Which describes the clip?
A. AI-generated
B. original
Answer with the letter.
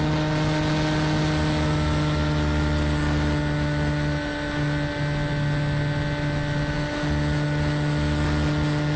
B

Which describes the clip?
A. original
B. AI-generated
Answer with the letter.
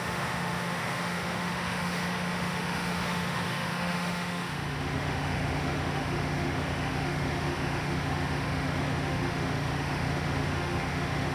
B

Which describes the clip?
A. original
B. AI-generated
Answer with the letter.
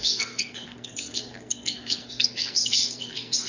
B